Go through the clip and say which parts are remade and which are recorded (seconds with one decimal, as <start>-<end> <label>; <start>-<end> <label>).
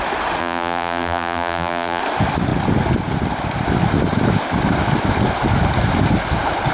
0.0-0.4 recorded; 0.4-2.0 remade; 2.0-6.7 recorded